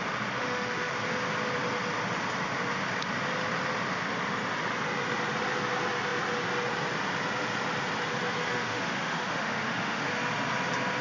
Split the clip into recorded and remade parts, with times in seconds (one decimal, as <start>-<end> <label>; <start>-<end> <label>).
0.0-0.4 recorded; 0.4-0.9 remade; 0.9-8.5 recorded; 8.5-10.1 remade; 10.1-11.0 recorded